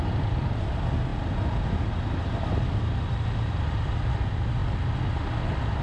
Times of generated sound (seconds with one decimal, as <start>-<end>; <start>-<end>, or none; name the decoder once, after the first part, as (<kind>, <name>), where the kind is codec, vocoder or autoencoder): none